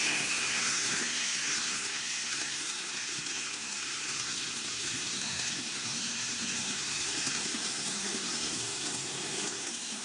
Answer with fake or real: fake